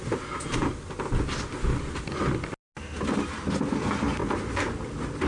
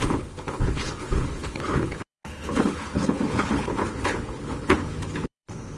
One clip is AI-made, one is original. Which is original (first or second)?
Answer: first